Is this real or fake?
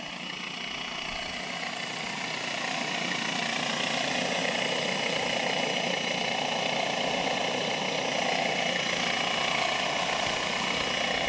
real